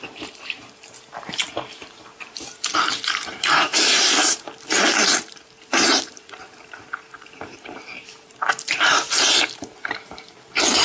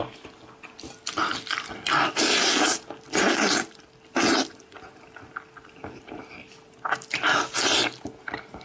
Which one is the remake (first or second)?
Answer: first